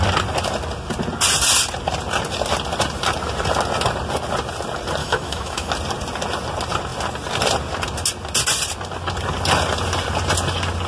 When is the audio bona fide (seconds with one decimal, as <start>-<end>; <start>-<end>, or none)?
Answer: 0.0-5.0; 5.7-10.9